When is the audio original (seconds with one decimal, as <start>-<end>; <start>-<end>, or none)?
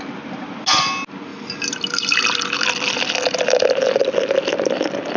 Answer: 0.0-5.2